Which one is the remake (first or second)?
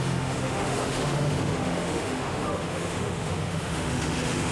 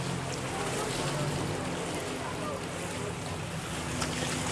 first